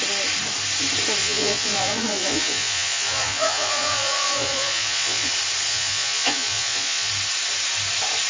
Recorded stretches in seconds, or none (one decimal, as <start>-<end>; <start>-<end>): 0.0-1.2; 5.3-5.7; 7.1-8.3